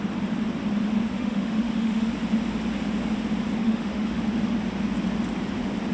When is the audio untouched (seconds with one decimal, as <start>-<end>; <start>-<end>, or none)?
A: 0.0-1.1; 2.1-3.6; 4.2-5.9